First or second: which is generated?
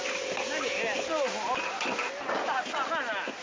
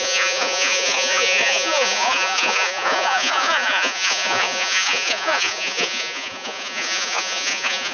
second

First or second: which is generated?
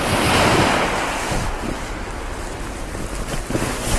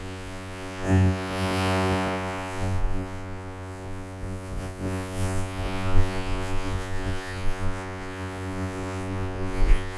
second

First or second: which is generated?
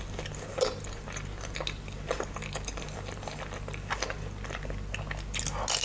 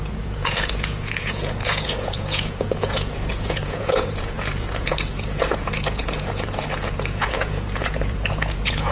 second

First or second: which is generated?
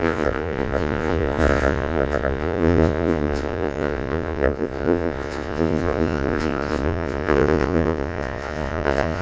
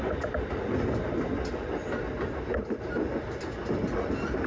first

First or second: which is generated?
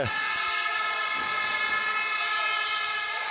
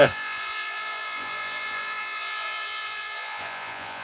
second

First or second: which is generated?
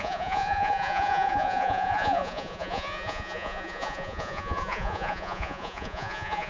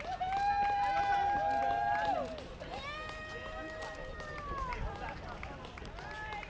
first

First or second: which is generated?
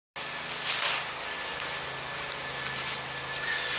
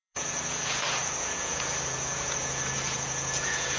second